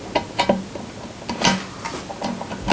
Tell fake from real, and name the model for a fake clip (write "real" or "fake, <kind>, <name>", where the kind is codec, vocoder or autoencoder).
real